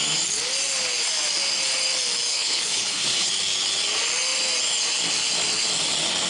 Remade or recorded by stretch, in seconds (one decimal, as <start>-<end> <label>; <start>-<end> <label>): 0.0-2.3 recorded; 2.3-3.3 remade; 3.3-6.3 recorded